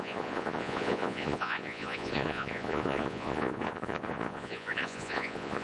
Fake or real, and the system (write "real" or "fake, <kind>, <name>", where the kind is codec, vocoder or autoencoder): fake, vocoder, Vocos